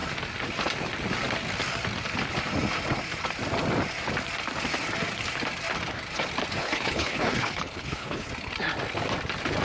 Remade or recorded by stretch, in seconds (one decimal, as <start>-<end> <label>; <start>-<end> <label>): 0.0-6.6 recorded; 6.6-8.3 remade; 8.3-9.6 recorded